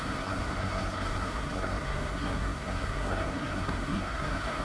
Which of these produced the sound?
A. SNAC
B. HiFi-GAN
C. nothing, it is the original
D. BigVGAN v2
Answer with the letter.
A